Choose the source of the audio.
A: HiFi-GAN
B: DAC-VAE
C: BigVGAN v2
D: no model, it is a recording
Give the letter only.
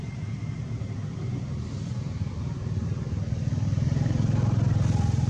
D